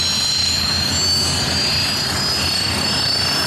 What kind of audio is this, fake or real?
real